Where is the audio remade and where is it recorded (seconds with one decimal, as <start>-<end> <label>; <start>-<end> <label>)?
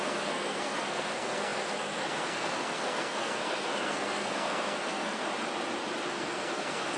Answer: 0.0-5.2 remade; 5.2-6.1 recorded; 6.1-7.0 remade